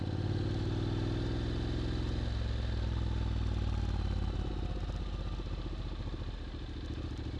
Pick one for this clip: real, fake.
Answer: real